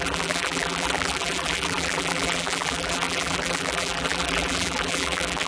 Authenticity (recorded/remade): remade